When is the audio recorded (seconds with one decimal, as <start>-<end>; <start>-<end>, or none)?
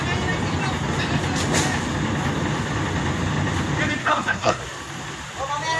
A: 0.0-4.0; 4.6-5.8